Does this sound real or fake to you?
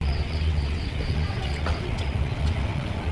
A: fake